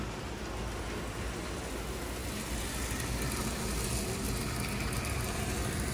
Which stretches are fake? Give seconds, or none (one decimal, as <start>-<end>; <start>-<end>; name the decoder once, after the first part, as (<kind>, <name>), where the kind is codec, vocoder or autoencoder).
none